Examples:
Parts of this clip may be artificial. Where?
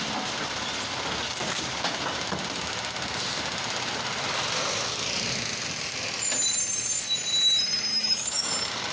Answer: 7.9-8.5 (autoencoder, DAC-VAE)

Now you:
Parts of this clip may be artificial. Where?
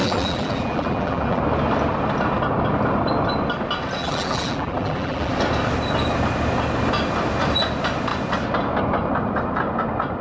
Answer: 0.0-1.4 (vocoder, BigVGAN v2); 4.0-5.3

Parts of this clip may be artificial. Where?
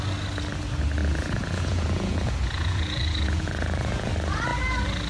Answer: 1.0-4.1 (vocoder, Vocos)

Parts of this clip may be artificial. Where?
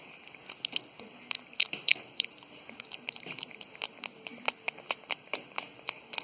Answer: 1.9-3.7 (vocoder, BigVGAN v2)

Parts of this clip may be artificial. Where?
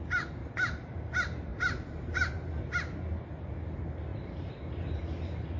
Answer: 0.4-1.0 (vocoder, BigVGAN v2); 4.1-5.6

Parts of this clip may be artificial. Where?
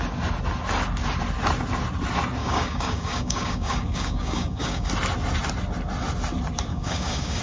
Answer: 2.4-4.9 (codec, DAC); 6.7-7.4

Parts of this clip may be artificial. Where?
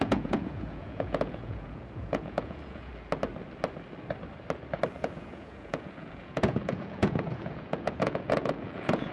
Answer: 0.0-2.9 (vocoder, Vocos); 4.9-9.1